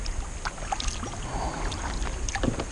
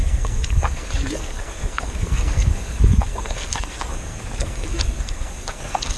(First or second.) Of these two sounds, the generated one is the second